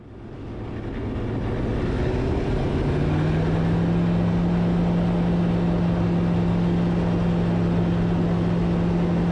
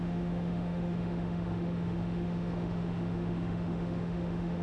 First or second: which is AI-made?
second